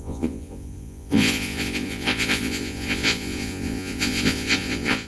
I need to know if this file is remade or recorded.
remade